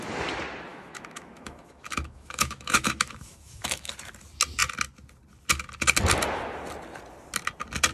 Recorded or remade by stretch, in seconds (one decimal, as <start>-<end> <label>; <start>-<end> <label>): 0.0-0.7 recorded; 0.7-3.9 remade; 3.9-7.9 recorded